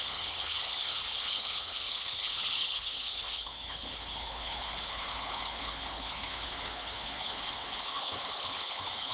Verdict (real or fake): fake